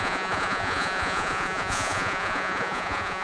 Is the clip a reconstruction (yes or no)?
yes